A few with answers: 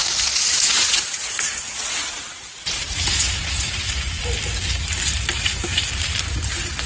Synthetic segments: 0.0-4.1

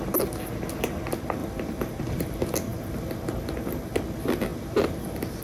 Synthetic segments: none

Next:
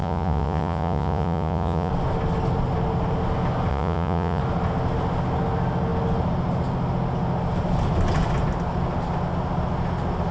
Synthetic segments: 0.0-1.9; 3.7-4.4

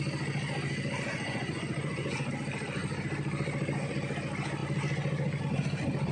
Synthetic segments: 1.1-2.3